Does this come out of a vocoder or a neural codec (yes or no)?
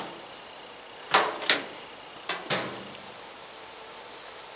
no